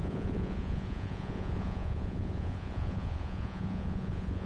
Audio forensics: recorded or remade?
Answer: remade